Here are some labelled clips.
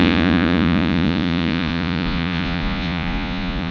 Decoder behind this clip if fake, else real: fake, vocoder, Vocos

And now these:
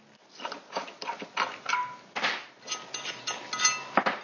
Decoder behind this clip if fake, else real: real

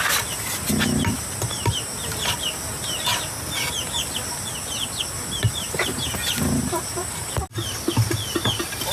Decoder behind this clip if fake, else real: real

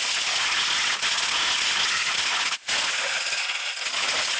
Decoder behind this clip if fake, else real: real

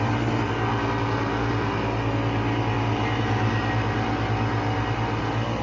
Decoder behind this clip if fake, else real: real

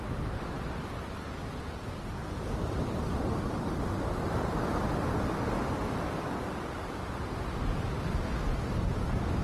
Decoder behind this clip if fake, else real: real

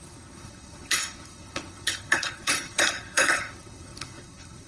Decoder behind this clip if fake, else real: fake, codec, HILCodec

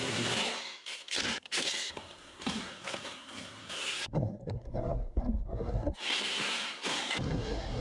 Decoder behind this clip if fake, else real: fake, codec, SNAC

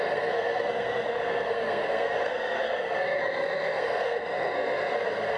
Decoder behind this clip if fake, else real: fake, codec, SNAC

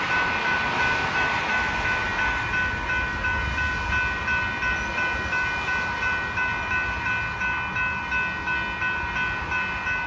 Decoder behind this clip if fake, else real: real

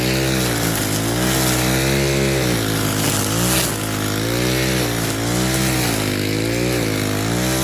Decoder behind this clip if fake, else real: real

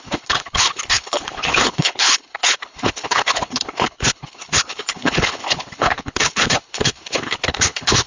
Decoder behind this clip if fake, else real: fake, codec, HILCodec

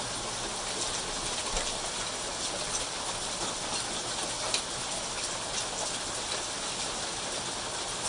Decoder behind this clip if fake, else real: real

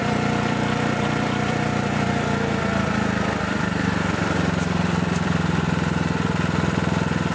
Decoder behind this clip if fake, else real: fake, vocoder, BigVGAN v2